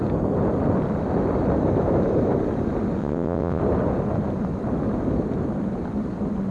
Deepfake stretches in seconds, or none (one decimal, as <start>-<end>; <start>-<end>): 3.0-3.6